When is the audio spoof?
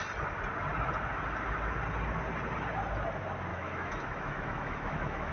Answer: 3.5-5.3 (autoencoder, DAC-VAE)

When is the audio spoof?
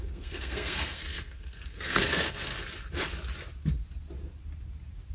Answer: 0.0-2.5 (codec, SNAC)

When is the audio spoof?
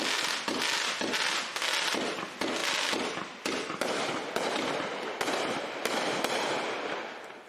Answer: none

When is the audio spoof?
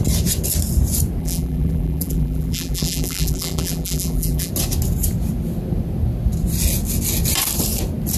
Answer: 1.2-4.5 (vocoder, BigVGAN v2)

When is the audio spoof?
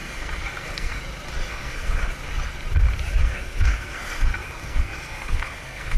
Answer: 0.0-1.0 (codec, SNAC); 1.5-2.1; 3.2-6.0